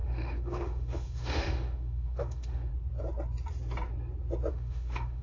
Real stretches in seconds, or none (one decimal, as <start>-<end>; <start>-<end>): 2.7-4.5